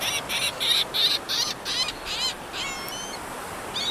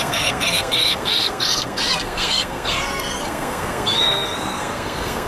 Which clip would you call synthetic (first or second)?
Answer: second